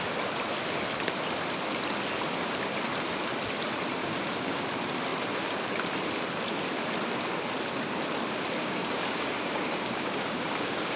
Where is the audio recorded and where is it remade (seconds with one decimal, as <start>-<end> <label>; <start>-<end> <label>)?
0.0-4.0 recorded; 4.0-4.6 remade; 4.6-8.6 recorded; 8.6-11.0 remade